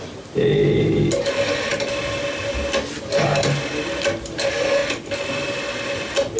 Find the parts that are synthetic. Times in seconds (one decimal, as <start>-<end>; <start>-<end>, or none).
none